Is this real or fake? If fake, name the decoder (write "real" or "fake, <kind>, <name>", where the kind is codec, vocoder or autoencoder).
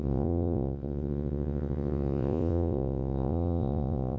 fake, vocoder, Vocos